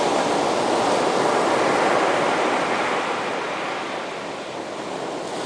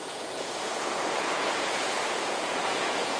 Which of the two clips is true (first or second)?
first